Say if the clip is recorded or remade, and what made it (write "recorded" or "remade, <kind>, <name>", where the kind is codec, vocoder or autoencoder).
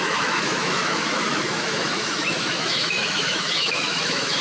remade, autoencoder, DAC-VAE